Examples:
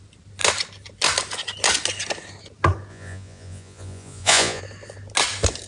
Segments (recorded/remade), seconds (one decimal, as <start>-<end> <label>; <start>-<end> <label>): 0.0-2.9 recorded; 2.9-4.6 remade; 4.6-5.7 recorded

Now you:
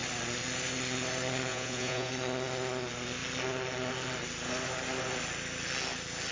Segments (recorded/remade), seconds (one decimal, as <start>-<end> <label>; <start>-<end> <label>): 0.0-1.5 recorded; 1.5-2.1 remade; 2.1-6.3 recorded

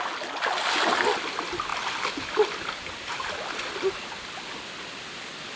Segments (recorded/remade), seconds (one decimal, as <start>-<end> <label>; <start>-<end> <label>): 0.0-5.6 recorded